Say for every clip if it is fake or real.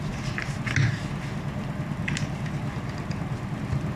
real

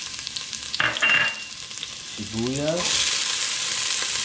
real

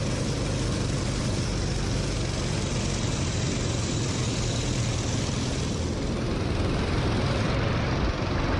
real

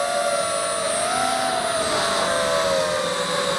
real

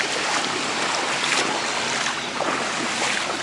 real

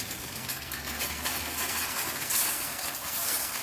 fake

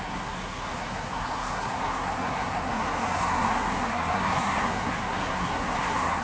fake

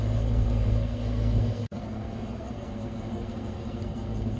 fake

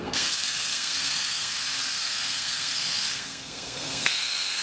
fake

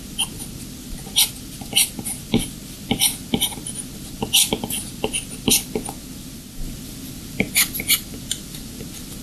real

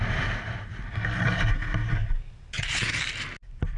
real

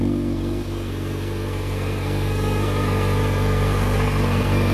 fake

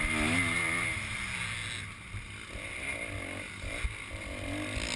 real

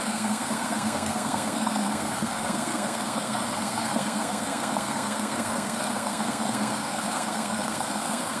fake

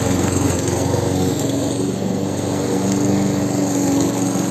fake